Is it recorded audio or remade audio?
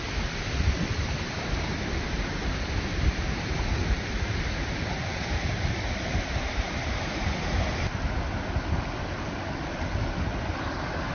recorded